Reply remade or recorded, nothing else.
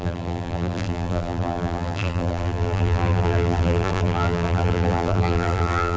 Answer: remade